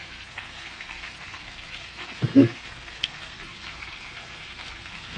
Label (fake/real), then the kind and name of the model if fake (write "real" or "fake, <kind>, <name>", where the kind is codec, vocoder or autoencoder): fake, codec, SNAC